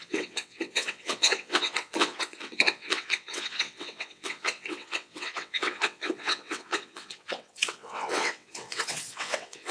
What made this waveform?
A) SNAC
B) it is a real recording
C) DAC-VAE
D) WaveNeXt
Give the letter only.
D